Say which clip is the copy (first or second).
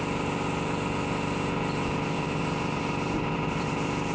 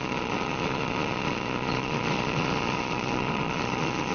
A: second